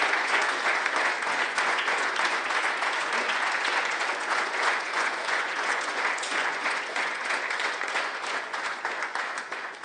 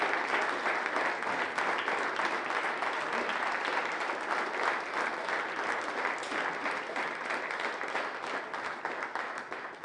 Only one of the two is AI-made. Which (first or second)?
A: first